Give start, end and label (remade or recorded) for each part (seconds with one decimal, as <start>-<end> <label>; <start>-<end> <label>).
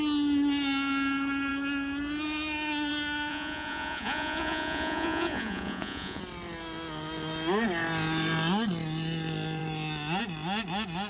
0.0-3.3 recorded; 3.3-6.2 remade; 6.2-11.1 recorded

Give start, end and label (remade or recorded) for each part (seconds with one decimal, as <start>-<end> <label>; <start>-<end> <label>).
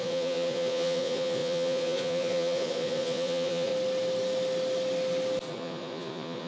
0.0-3.7 remade; 3.7-5.5 recorded; 5.5-6.5 remade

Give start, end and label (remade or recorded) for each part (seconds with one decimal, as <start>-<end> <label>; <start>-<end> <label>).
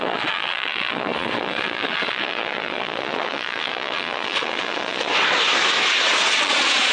0.0-5.1 remade; 5.1-6.4 recorded; 6.4-6.9 remade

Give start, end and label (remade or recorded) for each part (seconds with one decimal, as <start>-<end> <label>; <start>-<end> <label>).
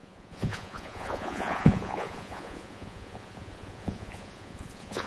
0.0-5.1 remade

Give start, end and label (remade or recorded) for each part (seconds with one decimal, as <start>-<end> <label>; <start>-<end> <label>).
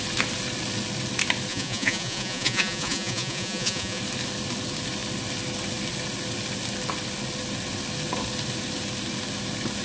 0.0-1.5 recorded; 1.5-4.0 remade; 4.0-9.8 recorded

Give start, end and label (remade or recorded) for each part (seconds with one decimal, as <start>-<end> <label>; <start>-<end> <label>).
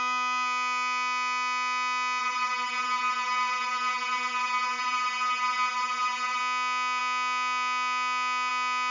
0.0-2.2 recorded; 2.2-6.4 remade; 6.4-8.9 recorded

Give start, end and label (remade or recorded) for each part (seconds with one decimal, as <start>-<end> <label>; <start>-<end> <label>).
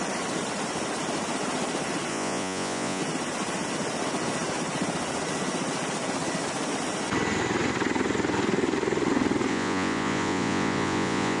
0.0-2.1 recorded; 2.1-3.0 remade; 3.0-9.5 recorded; 9.5-11.4 remade